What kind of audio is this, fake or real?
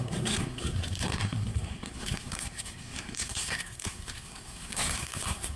fake